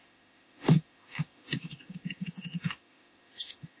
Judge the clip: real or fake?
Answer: fake